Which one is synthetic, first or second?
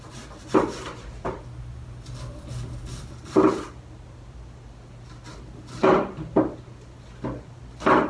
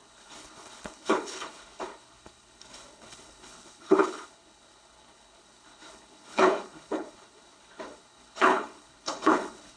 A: second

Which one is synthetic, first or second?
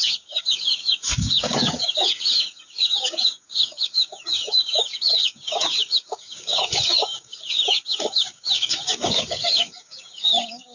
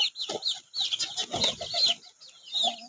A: first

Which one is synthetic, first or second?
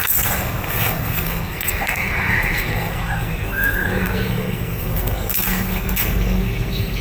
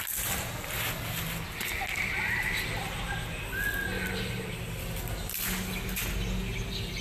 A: first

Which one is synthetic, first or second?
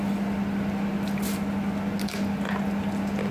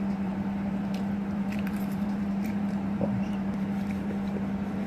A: second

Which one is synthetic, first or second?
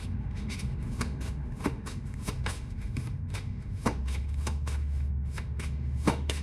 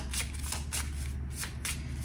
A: first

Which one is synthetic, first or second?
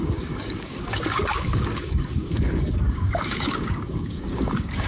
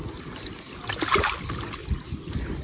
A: first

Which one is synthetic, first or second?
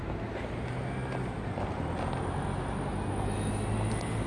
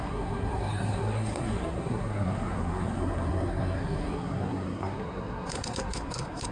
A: second